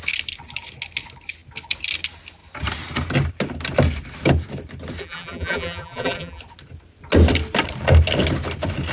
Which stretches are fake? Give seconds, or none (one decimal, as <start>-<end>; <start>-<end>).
5.0-6.4